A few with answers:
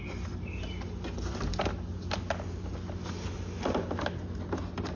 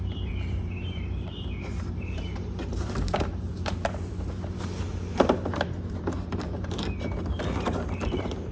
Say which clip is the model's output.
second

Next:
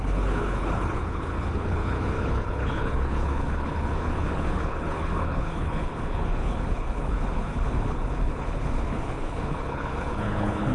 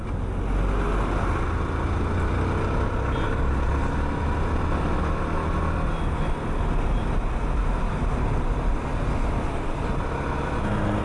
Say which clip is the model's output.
first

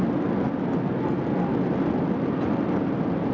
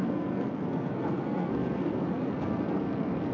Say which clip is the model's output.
second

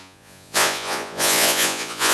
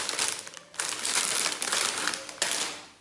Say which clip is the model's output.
first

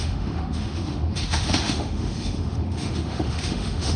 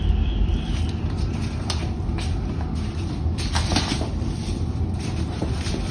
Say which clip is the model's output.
first